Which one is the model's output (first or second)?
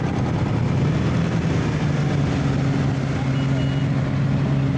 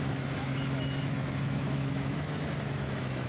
second